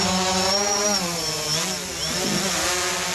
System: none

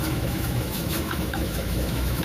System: autoencoder, DAC-VAE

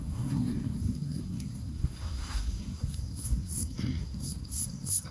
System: codec, SNAC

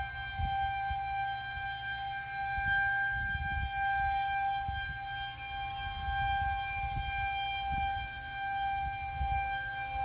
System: none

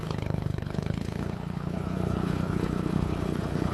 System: codec, HILCodec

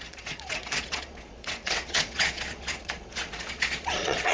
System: vocoder, Vocos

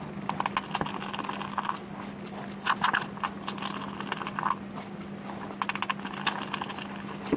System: none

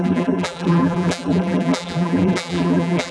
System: vocoder, BigVGAN v2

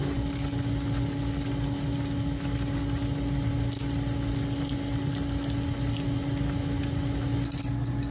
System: none